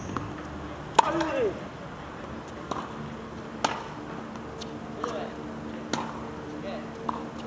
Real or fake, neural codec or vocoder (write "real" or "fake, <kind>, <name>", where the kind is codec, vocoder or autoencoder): real